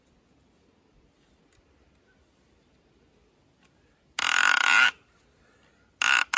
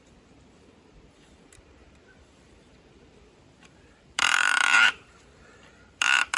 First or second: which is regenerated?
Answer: second